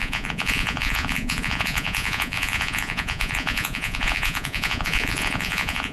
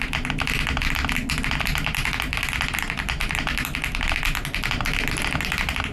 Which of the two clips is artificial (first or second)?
first